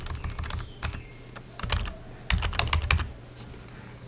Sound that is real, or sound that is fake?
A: real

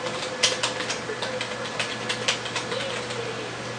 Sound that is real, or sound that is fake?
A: real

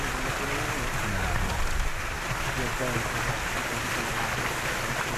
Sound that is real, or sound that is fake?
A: real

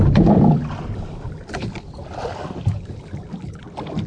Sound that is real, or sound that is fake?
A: fake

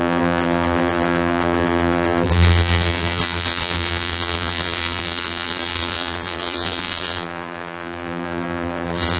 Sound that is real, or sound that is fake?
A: fake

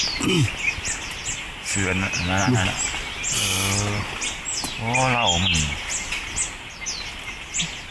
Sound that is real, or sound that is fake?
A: real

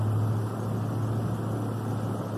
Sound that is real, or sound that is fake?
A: real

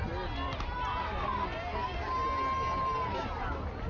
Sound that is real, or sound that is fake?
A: real